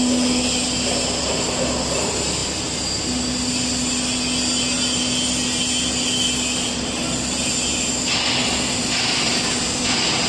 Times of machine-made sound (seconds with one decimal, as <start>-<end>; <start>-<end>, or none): none